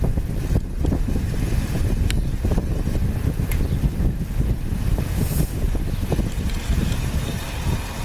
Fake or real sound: real